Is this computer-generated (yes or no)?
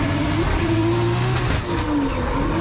no